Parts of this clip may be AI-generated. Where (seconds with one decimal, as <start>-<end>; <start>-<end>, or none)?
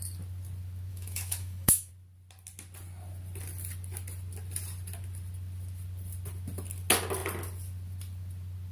0.9-1.9